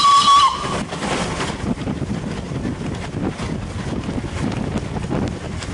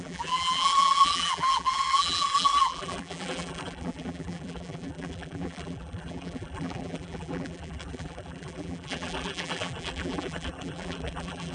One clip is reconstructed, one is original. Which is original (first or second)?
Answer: first